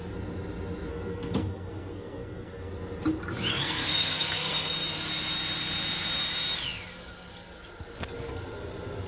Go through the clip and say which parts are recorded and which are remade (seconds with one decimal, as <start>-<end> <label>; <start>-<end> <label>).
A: 0.0-0.9 recorded; 0.9-2.7 remade; 2.7-3.5 recorded; 3.5-4.7 remade; 4.7-9.1 recorded